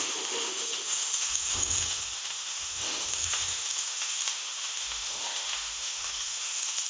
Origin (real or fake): fake